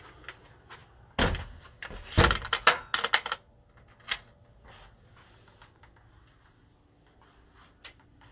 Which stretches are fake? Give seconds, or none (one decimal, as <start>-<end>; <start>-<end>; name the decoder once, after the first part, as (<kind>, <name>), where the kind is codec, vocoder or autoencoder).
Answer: none